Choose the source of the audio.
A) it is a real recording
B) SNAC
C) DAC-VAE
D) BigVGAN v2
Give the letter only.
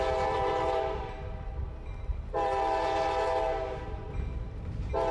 D